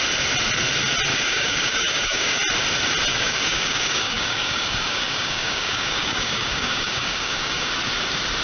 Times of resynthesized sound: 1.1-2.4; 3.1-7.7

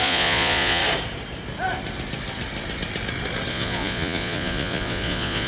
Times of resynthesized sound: 0.0-0.8; 3.5-5.5

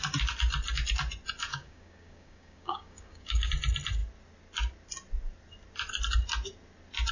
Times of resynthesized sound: 1.5-3.5

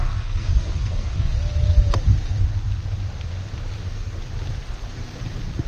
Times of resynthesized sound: 0.0-1.3; 3.8-4.2

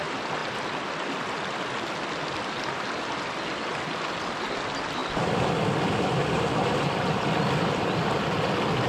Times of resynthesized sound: none